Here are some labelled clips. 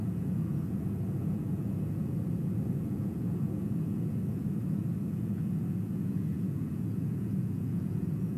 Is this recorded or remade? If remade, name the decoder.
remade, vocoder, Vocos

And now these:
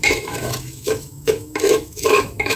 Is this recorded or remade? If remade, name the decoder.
remade, autoencoder, DAC-VAE